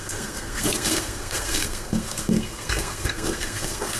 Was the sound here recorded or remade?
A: remade